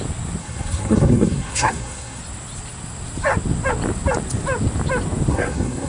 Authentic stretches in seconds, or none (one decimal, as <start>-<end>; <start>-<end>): 0.0-0.4; 2.2-5.3